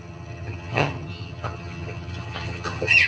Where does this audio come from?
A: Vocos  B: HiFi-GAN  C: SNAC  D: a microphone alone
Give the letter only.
B